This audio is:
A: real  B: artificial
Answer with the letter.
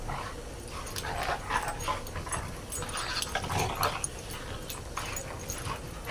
A